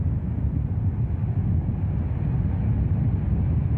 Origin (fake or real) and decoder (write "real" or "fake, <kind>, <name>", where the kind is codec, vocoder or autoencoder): real